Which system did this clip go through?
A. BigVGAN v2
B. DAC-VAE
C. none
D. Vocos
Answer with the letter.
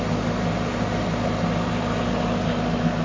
C